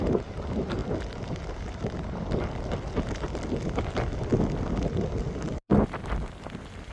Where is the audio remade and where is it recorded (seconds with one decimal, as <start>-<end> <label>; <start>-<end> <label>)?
0.0-6.9 recorded